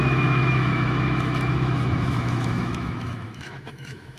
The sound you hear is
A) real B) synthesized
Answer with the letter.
B